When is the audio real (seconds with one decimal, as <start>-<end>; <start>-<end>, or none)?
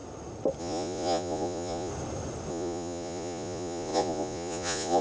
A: 0.0-0.6; 1.9-2.5